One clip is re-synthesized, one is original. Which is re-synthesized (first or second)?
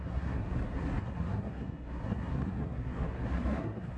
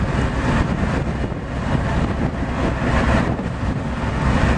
first